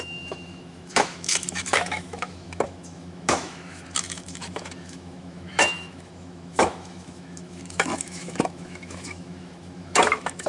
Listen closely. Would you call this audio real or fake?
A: fake